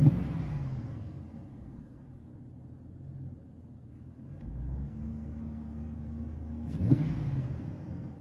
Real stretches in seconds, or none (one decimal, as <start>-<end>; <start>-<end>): 0.0-0.5; 2.3-3.9